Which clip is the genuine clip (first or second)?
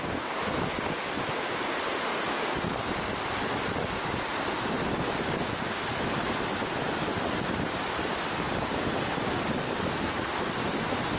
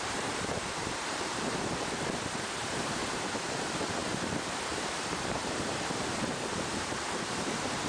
first